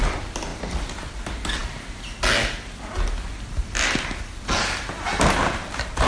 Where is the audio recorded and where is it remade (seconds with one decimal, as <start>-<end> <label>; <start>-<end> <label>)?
0.0-6.1 recorded